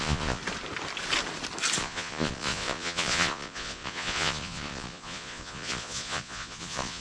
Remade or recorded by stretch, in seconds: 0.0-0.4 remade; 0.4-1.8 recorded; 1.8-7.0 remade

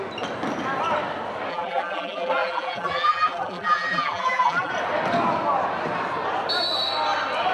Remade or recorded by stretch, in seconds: 0.0-1.5 recorded; 1.5-4.7 remade; 4.7-7.5 recorded

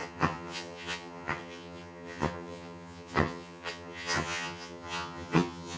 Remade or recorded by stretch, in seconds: 0.0-5.8 remade